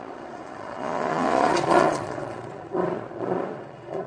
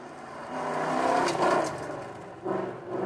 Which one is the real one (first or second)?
second